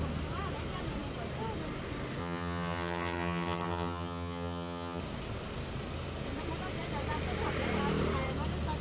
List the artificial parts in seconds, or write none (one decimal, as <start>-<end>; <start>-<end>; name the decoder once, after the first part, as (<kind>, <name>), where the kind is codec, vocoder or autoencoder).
2.2-5.0 (vocoder, HiFi-GAN)